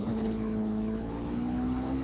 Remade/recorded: remade